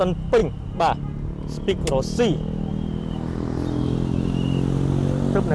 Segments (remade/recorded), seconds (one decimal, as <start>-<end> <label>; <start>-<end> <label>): 0.0-5.5 recorded